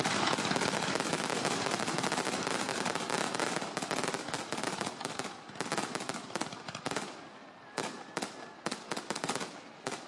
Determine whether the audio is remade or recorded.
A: recorded